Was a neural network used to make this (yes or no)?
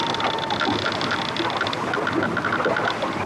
no